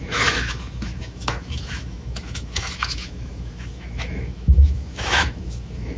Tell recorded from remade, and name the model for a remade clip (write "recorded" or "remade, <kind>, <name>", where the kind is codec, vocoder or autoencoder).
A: remade, autoencoder, DAC-VAE